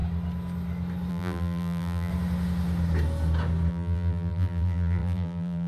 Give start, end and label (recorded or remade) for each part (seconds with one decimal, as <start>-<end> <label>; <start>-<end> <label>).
0.0-1.1 recorded; 1.1-2.1 remade; 2.1-3.7 recorded; 3.7-5.7 remade